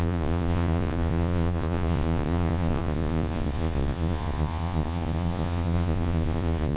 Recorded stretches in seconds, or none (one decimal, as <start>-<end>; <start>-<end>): none